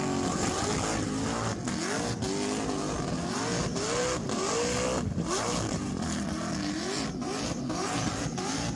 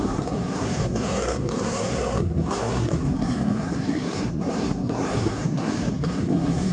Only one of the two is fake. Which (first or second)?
second